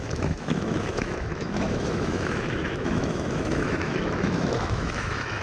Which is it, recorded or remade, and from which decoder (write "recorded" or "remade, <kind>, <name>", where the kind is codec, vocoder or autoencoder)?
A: remade, autoencoder, DAC-VAE